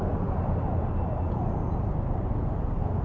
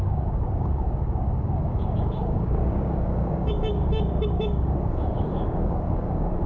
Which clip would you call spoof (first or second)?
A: second